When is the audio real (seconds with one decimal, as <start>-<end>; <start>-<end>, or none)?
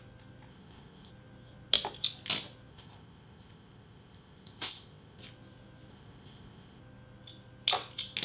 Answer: 0.0-0.5; 1.1-2.7; 5.2-5.9; 6.8-8.2